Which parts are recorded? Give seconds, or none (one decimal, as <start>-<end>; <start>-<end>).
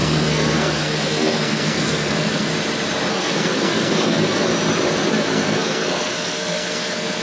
2.5-3.1; 4.5-5.1